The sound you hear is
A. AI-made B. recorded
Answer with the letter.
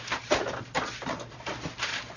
B